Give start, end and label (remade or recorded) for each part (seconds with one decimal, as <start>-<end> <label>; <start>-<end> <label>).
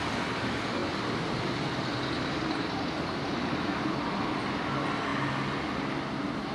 0.0-0.8 recorded; 0.8-4.5 remade; 4.5-6.5 recorded